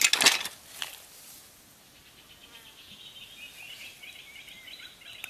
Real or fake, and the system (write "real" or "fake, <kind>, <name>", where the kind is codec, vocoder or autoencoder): real